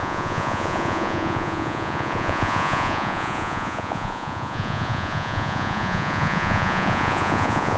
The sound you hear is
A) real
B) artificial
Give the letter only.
B